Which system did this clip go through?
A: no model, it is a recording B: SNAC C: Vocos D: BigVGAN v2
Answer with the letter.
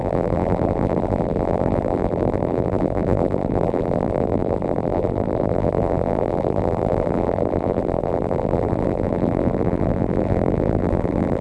D